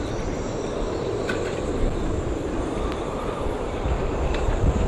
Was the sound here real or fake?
fake